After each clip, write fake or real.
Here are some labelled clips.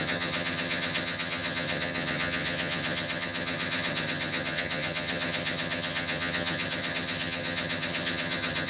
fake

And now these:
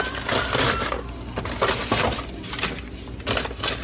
real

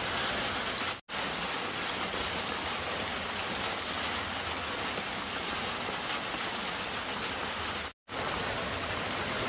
real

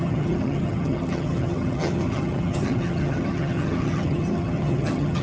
fake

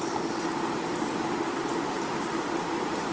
real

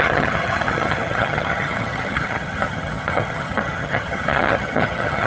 fake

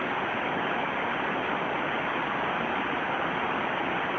real